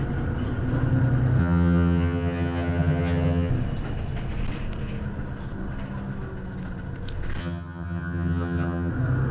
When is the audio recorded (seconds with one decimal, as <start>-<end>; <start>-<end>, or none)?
0.0-1.4; 3.5-7.4; 8.9-9.3